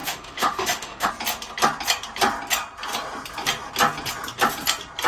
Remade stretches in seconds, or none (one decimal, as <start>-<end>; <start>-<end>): 0.0-1.1